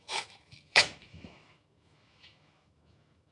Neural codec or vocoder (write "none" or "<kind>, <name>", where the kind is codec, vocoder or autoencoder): autoencoder, DAC-VAE